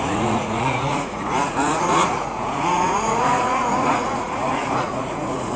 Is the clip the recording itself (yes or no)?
no